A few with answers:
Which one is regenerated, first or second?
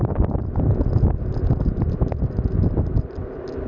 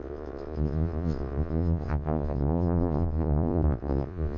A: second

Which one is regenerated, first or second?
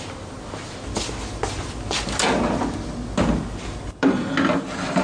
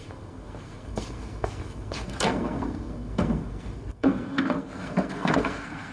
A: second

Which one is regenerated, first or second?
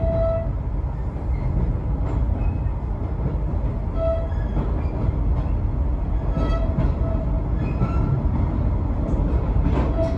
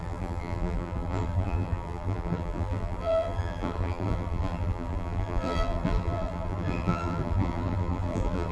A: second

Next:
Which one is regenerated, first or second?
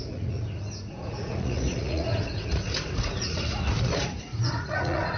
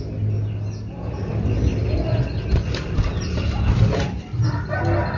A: first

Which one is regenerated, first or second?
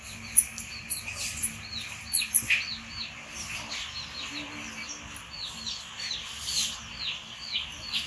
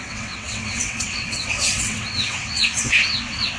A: second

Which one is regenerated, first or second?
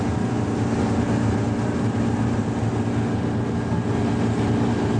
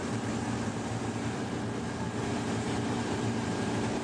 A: second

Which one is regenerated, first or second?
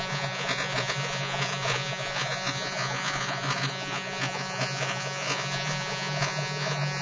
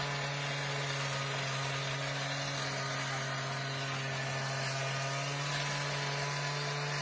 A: first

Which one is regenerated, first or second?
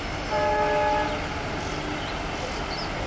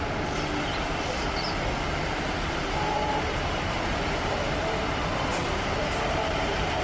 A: second